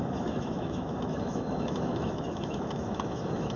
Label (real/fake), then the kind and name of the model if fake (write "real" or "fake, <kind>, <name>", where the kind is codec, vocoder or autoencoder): fake, autoencoder, DAC-VAE